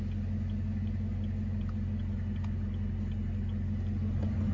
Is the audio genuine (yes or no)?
yes